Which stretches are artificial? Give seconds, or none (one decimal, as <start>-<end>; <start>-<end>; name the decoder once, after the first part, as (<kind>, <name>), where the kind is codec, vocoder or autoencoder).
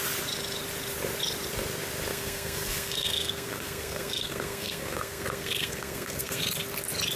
2.1-6.4 (codec, SNAC)